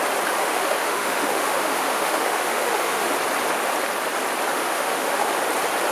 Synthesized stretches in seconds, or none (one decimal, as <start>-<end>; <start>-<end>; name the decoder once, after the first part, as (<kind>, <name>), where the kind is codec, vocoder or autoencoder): 0.4-3.1 (autoencoder, DAC-VAE); 4.5-5.4